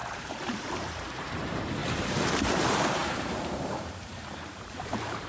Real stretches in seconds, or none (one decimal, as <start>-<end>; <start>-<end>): 1.8-2.5